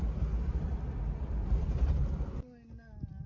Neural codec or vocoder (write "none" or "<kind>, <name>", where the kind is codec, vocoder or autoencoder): none